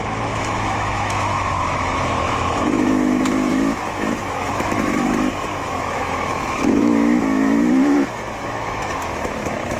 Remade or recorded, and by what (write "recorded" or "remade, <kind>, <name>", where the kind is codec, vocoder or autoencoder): remade, autoencoder, DAC-VAE